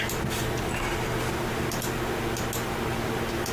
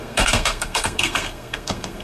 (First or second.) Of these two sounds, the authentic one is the first